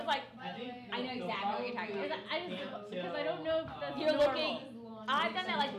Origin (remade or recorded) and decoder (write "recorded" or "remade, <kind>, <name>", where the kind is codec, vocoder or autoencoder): recorded